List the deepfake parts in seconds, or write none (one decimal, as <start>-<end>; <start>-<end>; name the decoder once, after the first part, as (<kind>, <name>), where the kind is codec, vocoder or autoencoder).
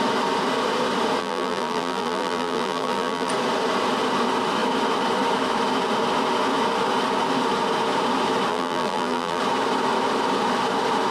1.2-3.3 (vocoder, BigVGAN v2); 8.5-9.4